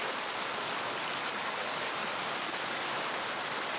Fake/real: real